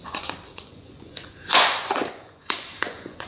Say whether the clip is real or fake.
fake